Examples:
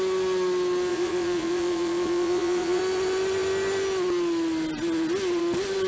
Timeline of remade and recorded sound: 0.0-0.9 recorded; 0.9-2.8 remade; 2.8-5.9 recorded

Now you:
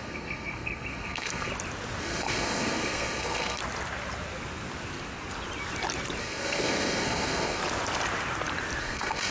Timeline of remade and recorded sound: 0.0-1.5 remade; 1.5-2.0 recorded; 2.0-3.6 remade; 3.6-6.2 recorded; 6.2-7.6 remade; 7.6-8.8 recorded; 8.8-9.3 remade

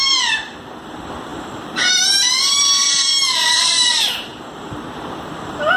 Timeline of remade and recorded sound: 0.0-5.8 remade

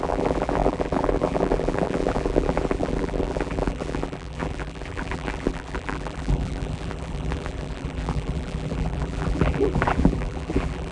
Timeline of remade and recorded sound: 0.0-10.9 remade

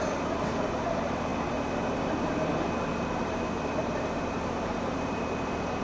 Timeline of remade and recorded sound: 0.0-5.8 remade

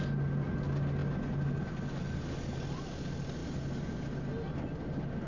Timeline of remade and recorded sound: 0.0-5.3 recorded

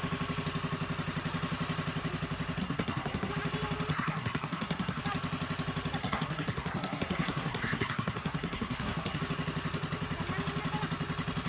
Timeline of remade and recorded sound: 0.0-2.6 recorded; 2.6-3.3 remade; 3.3-3.9 recorded; 3.9-5.0 remade; 5.0-6.0 recorded; 6.0-9.2 remade; 9.2-11.5 recorded